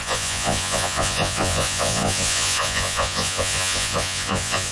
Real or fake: fake